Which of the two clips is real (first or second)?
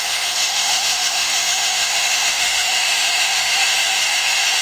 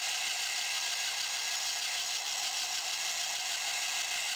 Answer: second